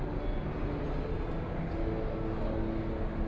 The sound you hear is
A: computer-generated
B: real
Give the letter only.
B